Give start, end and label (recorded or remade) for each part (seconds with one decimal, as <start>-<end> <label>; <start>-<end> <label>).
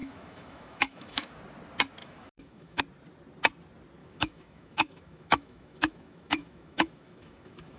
0.0-1.3 remade; 1.3-2.0 recorded; 2.0-2.8 remade; 2.8-4.0 recorded; 4.0-7.8 remade